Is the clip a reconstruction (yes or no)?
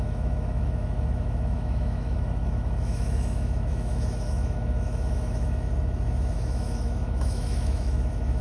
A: yes